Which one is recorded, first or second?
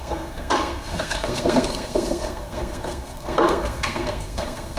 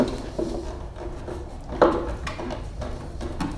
second